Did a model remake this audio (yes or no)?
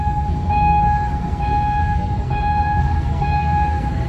yes